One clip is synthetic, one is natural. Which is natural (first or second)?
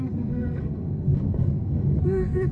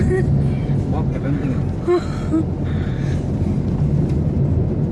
second